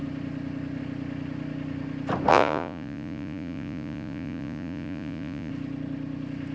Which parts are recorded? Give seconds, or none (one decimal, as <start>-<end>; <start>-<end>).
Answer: 0.0-2.3; 5.5-6.5